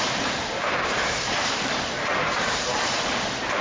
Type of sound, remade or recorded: remade